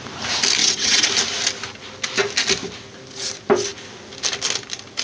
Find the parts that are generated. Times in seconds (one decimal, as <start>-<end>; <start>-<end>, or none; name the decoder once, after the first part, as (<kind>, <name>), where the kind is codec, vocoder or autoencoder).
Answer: 0.6-1.1 (vocoder, WaveNeXt)